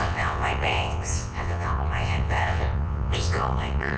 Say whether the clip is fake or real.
fake